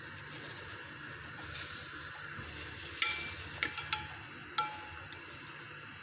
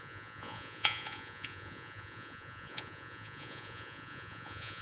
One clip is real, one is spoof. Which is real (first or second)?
first